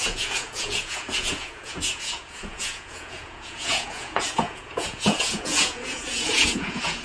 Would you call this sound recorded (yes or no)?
no